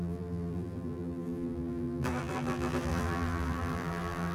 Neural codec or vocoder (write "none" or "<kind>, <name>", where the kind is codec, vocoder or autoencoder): vocoder, BigVGAN v2